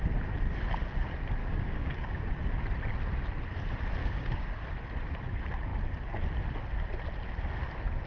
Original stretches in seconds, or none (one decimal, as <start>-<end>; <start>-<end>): 0.0-1.4; 2.3-4.0; 4.5-8.1